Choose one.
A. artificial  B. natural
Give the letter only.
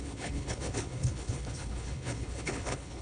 A